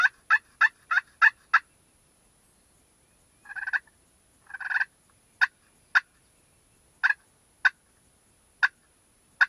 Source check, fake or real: real